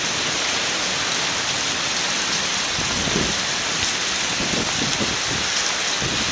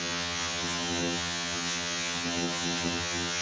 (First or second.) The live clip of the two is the first